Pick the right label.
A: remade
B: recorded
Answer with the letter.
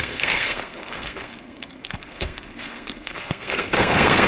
A